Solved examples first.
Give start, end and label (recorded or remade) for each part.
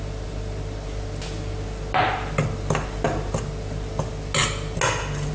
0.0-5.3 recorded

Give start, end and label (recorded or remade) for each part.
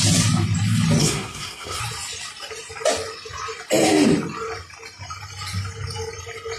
0.0-1.0 recorded; 1.0-1.8 remade; 1.8-6.6 recorded